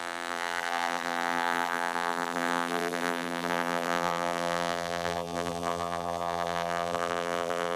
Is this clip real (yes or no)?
no